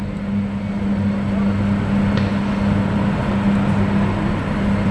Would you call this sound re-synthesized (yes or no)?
no